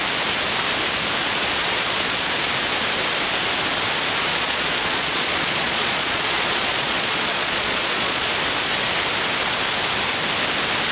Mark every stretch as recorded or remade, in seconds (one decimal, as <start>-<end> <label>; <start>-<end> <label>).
0.0-1.2 recorded; 1.2-2.3 remade; 2.3-4.3 recorded; 4.3-8.3 remade; 8.3-10.9 recorded